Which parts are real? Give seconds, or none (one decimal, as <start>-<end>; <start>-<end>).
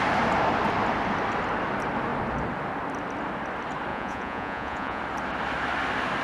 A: 0.0-3.9; 5.0-6.2